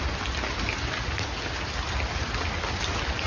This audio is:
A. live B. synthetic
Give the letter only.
A